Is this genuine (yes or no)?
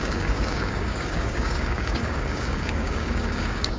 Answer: no